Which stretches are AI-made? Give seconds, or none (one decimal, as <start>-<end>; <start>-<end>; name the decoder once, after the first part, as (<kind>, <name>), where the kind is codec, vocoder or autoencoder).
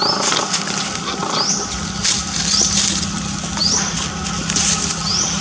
none